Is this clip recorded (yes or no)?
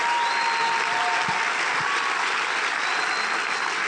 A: yes